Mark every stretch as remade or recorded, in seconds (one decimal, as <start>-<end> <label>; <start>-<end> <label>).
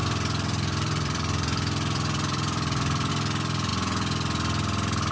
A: 0.0-3.1 remade; 3.1-5.1 recorded